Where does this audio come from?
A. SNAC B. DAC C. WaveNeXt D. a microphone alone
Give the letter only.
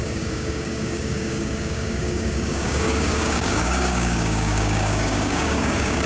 B